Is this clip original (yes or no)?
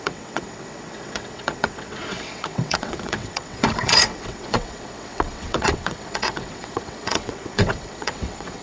no